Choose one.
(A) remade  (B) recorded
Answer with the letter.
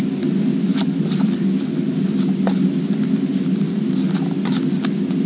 B